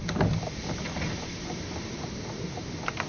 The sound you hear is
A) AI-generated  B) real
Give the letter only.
B